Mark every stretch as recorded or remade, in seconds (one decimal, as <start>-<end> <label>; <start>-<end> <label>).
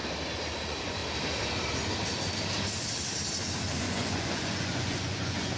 0.0-0.6 recorded; 0.6-1.0 remade; 1.0-3.8 recorded; 3.8-5.6 remade